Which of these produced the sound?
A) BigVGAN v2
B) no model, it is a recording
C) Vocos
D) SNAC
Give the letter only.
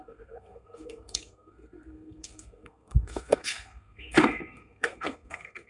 D